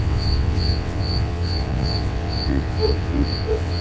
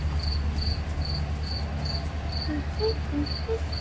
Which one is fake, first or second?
first